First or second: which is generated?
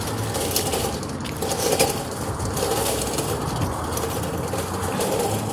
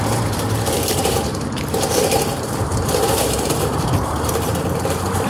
second